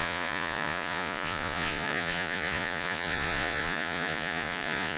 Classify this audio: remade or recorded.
remade